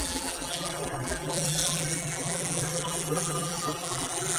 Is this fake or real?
fake